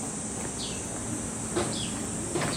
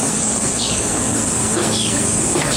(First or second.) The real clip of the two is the first